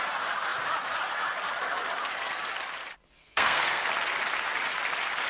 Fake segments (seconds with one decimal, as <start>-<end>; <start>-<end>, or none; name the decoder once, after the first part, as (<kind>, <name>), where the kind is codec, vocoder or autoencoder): 3.2-3.8 (codec, SNAC)